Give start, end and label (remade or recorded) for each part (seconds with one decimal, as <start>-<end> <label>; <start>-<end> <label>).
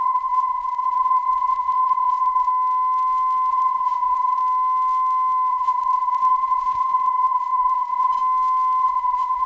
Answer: 0.0-2.5 remade; 2.5-3.5 recorded; 3.5-4.4 remade; 4.4-5.5 recorded; 5.5-8.2 remade; 8.2-8.8 recorded; 8.8-9.5 remade